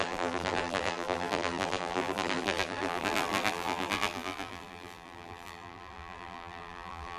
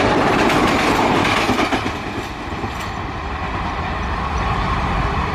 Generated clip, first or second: first